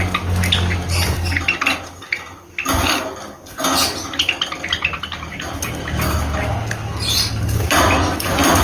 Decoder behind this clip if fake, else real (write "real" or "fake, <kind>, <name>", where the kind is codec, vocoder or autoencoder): real